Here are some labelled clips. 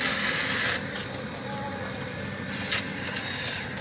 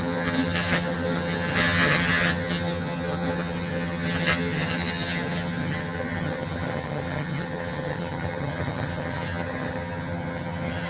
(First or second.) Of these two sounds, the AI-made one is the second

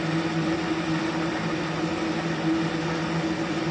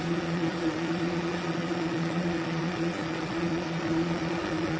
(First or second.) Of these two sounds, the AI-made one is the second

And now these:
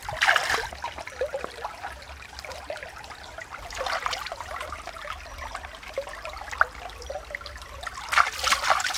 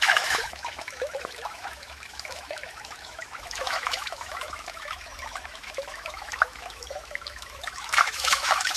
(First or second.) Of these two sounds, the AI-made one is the second